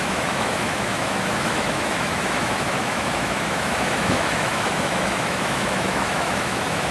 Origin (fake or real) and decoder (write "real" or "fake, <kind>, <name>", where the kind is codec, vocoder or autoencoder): fake, autoencoder, DAC-VAE